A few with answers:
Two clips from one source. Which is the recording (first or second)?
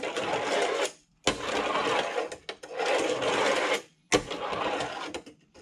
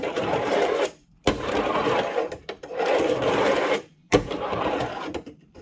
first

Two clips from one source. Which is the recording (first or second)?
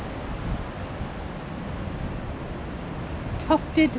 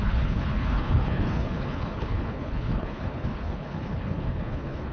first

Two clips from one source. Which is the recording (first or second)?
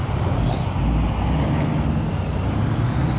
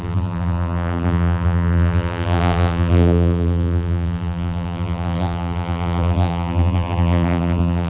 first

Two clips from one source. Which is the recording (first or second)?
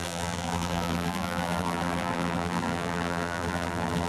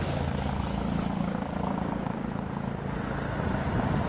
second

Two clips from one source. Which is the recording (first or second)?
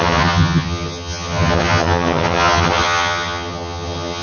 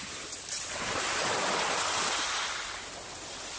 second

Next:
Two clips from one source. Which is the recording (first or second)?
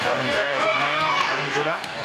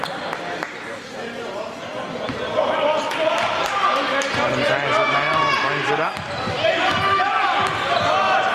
second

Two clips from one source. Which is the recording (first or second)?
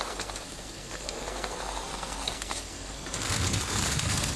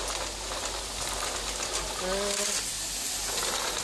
second